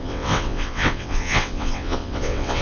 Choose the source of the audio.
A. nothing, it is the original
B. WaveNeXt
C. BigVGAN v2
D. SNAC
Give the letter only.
B